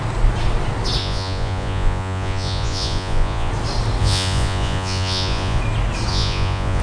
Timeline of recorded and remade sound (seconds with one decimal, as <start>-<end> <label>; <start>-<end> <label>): 0.0-1.0 recorded; 1.0-3.5 remade; 3.5-4.0 recorded; 4.0-5.6 remade; 5.6-6.1 recorded; 6.1-6.8 remade